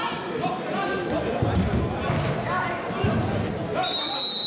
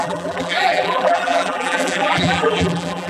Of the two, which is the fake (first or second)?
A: second